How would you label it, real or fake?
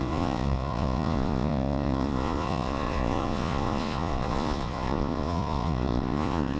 fake